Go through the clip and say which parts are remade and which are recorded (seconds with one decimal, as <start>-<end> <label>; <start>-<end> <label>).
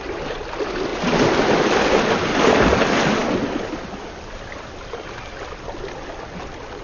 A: 0.0-6.8 recorded